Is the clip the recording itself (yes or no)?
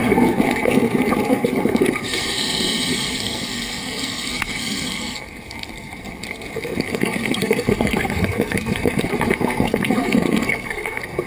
no